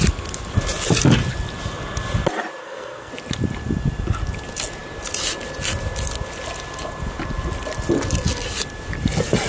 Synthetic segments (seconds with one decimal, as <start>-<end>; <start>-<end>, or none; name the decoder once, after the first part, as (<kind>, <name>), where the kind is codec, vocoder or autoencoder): 2.6-3.1 (codec, SNAC)